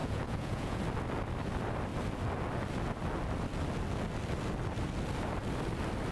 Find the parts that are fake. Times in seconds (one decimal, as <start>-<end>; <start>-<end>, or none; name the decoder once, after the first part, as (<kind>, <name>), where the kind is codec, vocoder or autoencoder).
0.0-0.8 (vocoder, Vocos)